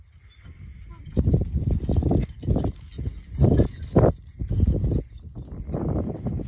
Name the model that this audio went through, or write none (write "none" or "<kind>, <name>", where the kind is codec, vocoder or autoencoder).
none